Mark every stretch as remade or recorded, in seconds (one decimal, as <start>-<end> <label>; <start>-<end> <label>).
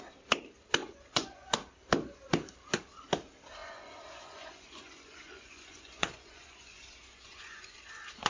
0.0-0.8 recorded; 0.8-1.5 remade; 1.5-3.6 recorded; 3.6-7.9 remade; 7.9-8.3 recorded